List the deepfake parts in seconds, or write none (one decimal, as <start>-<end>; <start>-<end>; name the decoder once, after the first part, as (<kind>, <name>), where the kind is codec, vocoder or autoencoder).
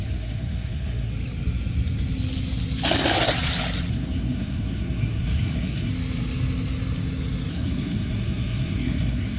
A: 0.0-1.1 (codec, SNAC); 3.9-5.9; 7.5-9.4